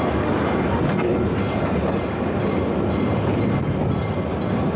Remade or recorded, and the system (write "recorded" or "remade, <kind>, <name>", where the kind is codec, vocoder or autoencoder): recorded